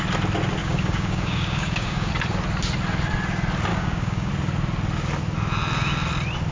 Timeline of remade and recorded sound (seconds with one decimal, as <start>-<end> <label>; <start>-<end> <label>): 0.0-0.6 recorded; 0.6-2.1 remade; 2.1-3.7 recorded; 3.7-4.3 remade; 4.3-6.5 recorded

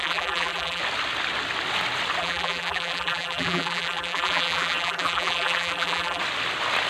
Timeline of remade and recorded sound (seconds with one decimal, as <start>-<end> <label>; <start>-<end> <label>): 0.0-0.8 remade; 0.8-2.2 recorded; 2.2-6.2 remade; 6.2-6.9 recorded

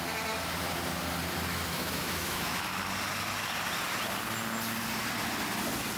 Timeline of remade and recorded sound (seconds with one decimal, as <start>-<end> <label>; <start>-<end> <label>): 0.0-1.5 recorded; 1.5-2.8 remade; 2.8-6.0 recorded

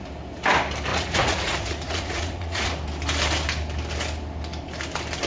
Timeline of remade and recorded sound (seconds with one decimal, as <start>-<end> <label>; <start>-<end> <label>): 0.0-0.9 recorded; 0.9-2.7 remade; 2.7-5.3 recorded